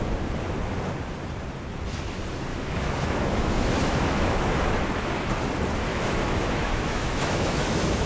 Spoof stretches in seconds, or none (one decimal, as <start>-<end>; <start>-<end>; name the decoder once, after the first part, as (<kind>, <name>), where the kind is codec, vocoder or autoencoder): 2.5-4.8 (autoencoder, DAC-VAE); 5.9-8.1